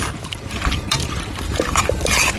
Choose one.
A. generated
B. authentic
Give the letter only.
A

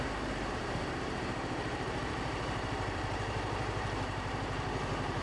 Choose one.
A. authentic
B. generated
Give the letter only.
B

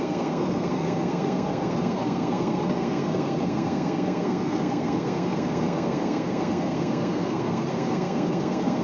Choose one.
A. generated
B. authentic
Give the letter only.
A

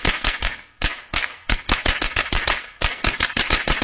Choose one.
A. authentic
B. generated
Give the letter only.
B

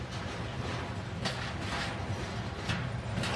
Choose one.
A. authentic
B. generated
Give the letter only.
A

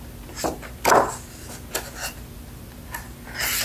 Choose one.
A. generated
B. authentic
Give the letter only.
B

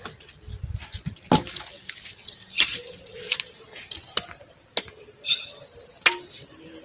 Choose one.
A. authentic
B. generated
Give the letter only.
A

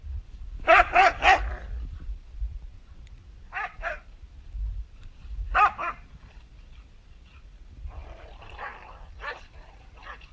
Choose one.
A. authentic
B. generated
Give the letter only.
B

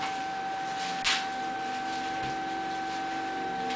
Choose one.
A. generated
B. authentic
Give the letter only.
B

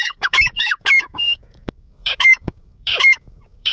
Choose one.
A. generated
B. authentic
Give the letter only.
A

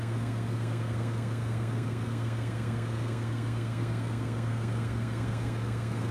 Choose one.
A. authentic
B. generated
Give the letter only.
B